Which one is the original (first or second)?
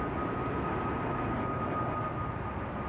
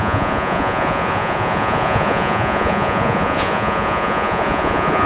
first